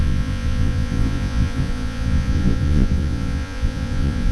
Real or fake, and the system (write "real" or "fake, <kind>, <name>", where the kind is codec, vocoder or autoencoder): fake, vocoder, Vocos